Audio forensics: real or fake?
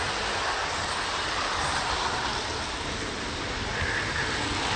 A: real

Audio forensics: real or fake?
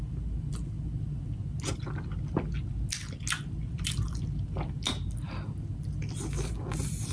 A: real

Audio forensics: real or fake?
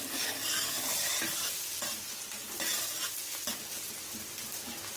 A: real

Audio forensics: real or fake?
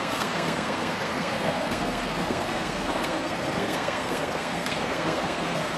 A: fake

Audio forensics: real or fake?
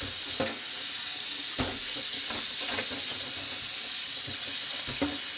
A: real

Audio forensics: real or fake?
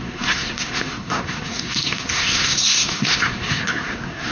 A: fake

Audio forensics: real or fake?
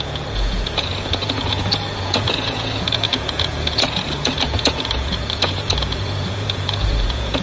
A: fake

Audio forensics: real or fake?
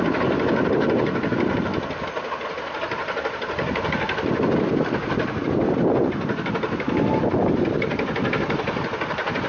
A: real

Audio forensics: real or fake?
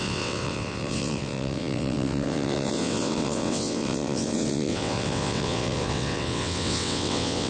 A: fake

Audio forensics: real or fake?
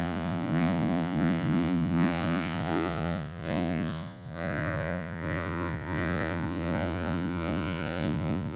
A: fake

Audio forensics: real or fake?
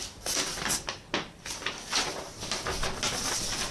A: real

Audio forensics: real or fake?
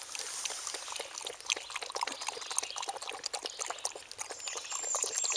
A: real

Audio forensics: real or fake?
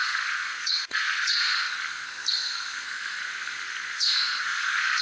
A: fake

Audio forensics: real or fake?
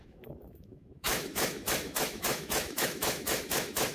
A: fake